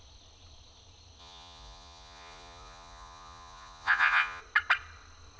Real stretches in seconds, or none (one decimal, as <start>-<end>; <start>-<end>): 0.0-1.2; 4.4-5.4